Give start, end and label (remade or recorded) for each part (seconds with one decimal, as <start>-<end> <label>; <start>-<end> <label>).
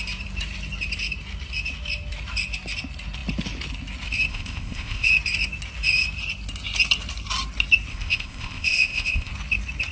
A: 0.0-4.3 recorded; 4.3-5.1 remade; 5.1-7.9 recorded; 7.9-9.3 remade; 9.3-9.9 recorded